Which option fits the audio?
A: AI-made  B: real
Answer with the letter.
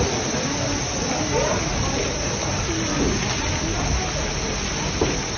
B